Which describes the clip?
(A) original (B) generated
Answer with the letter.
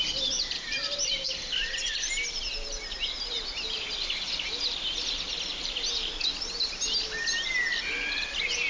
A